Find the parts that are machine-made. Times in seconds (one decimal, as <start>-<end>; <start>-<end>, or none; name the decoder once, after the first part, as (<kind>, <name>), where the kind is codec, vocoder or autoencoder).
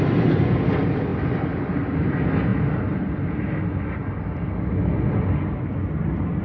none